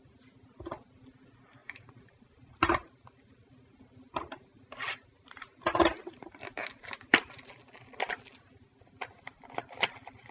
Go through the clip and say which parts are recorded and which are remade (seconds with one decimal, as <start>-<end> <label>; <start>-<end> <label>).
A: 0.0-1.6 recorded; 1.6-5.4 remade; 5.4-6.0 recorded; 6.0-7.3 remade; 7.3-10.3 recorded